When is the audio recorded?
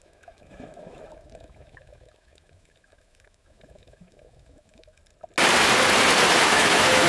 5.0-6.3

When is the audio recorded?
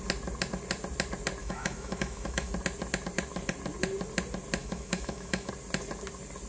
0.0-1.4; 2.5-4.6; 5.5-6.5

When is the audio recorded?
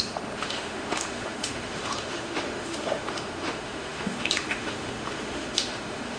none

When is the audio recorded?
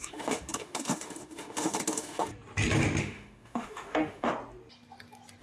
2.3-3.0; 4.3-5.4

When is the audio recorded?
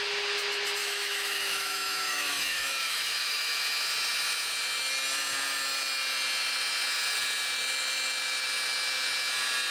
0.0-0.8; 3.4-9.7